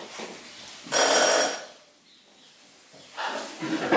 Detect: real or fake real